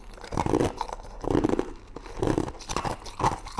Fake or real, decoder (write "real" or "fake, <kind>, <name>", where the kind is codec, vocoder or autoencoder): real